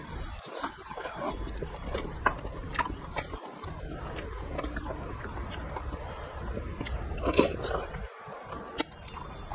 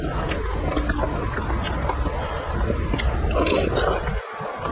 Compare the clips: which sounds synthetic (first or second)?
first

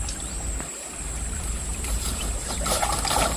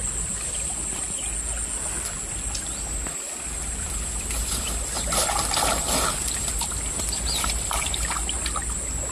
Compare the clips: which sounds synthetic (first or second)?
first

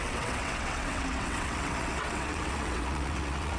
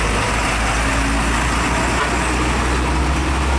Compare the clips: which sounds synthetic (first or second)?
first